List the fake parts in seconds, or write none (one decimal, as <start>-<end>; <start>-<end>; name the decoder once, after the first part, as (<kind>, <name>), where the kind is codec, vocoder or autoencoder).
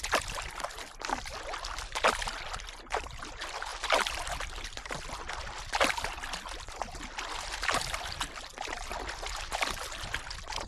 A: none